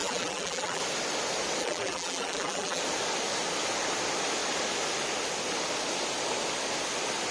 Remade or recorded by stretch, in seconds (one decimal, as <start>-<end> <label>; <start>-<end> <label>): 0.0-0.8 remade; 0.8-1.6 recorded; 1.6-2.8 remade; 2.8-7.3 recorded

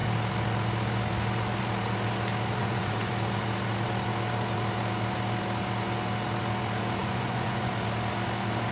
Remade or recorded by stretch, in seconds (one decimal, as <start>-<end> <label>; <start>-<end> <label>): 0.0-2.6 recorded; 2.6-3.1 remade; 3.1-7.0 recorded; 7.0-7.7 remade; 7.7-8.7 recorded